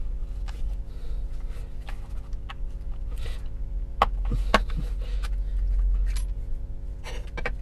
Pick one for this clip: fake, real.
real